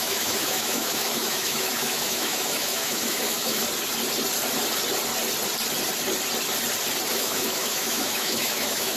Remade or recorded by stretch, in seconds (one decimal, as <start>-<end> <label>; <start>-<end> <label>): 0.0-3.6 remade; 3.6-7.1 recorded; 7.1-9.0 remade